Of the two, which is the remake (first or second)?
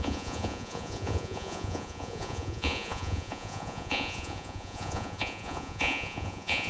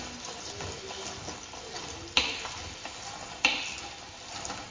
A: first